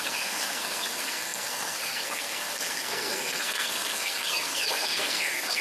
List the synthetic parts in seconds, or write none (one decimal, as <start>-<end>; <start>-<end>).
0.0-5.6